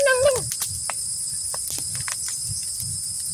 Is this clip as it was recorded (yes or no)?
yes